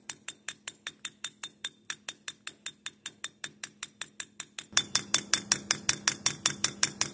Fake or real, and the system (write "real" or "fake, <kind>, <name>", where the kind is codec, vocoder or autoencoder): real